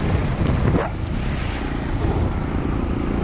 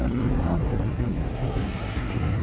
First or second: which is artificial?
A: second